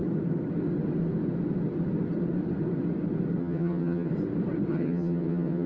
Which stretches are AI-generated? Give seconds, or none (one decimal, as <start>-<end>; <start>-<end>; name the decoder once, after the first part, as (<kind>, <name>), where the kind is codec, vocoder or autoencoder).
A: 3.4-4.1 (vocoder, HiFi-GAN); 4.7-5.7